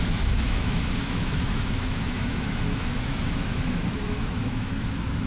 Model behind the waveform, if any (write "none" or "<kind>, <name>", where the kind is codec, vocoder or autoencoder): autoencoder, DAC-VAE